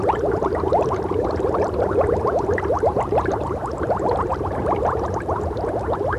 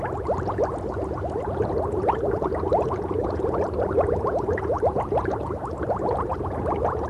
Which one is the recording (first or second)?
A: second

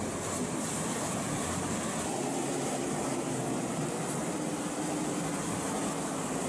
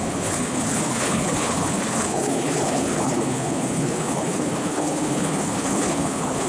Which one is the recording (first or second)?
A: first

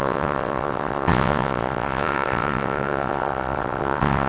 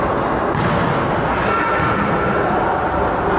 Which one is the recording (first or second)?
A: second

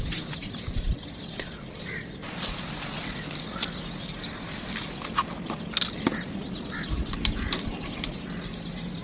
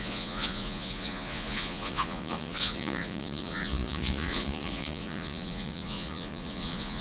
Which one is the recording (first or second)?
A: first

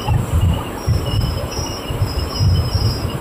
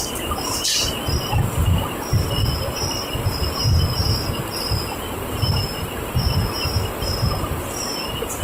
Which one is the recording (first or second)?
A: second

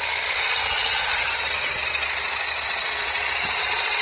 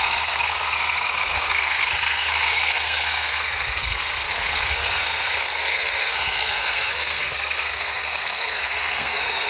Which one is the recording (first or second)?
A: first